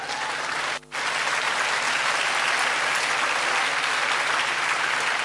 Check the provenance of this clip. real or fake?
real